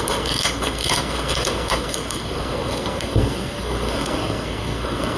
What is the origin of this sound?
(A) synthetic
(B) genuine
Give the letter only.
A